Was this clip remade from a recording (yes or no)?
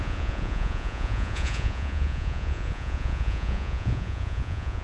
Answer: yes